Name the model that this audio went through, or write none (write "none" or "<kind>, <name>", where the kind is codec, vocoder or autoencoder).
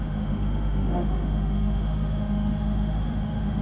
autoencoder, DAC-VAE